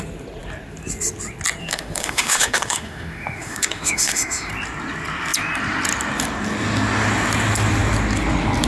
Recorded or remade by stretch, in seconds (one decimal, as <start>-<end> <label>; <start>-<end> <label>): 0.0-1.6 recorded; 1.6-4.5 remade; 4.5-8.7 recorded